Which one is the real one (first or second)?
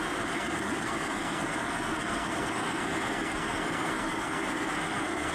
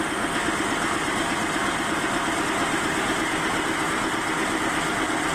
second